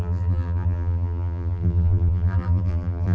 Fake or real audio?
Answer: fake